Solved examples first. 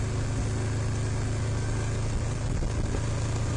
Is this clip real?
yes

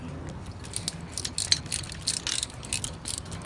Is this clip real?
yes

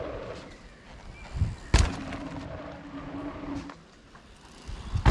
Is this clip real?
yes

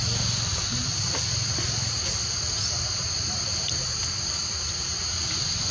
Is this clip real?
yes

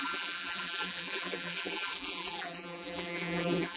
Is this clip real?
no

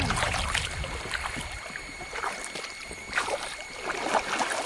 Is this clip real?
yes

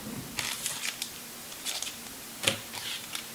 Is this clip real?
no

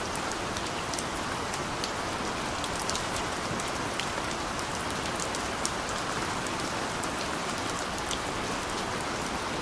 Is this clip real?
no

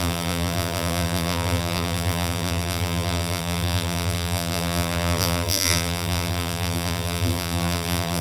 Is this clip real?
no